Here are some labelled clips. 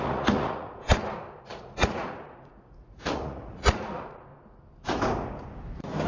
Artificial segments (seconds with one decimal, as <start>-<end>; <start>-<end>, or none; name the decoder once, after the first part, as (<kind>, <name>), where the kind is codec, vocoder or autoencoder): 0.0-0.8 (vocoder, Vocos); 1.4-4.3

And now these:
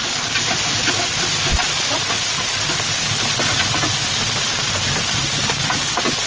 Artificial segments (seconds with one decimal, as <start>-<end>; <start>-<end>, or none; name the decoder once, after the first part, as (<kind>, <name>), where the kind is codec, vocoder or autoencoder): 4.8-5.4 (vocoder, BigVGAN v2)

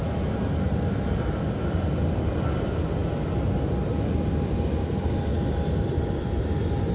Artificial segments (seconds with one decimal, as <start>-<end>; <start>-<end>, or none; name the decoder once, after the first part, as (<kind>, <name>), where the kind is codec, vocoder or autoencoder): none